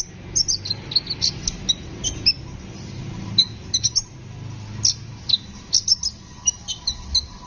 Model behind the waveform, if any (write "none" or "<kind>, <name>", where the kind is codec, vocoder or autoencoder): none